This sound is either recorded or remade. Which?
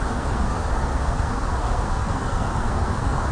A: remade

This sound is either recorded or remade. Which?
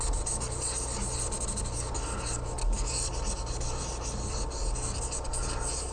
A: recorded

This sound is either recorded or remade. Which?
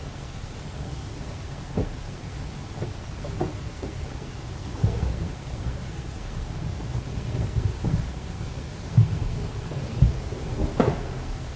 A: remade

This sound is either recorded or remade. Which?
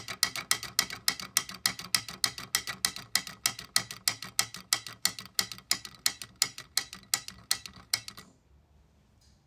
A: recorded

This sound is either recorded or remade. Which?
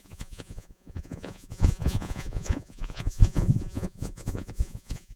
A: remade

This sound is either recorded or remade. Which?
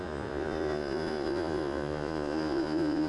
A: remade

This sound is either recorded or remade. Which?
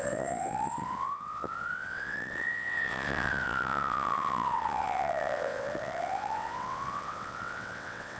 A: remade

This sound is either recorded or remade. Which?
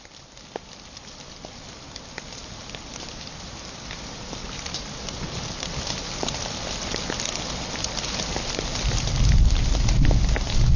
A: recorded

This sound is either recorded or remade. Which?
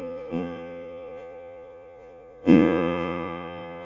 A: remade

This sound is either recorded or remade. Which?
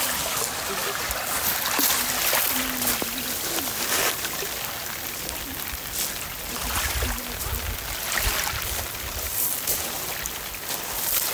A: recorded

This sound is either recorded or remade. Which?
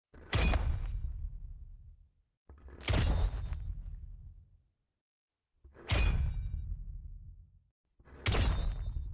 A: recorded